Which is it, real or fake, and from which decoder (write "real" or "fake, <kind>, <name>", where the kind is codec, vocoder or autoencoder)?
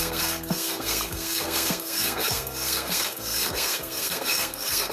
fake, codec, SNAC